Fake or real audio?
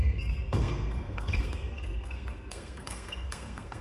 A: fake